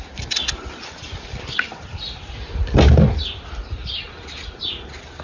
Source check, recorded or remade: recorded